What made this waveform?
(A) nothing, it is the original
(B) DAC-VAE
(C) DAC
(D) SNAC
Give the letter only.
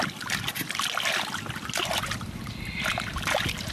A